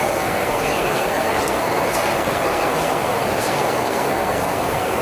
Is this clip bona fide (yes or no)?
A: no